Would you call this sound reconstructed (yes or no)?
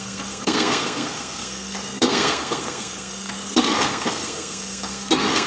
yes